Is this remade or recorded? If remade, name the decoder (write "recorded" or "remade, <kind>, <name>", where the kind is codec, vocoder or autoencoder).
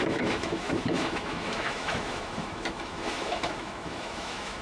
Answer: remade, autoencoder, DAC-VAE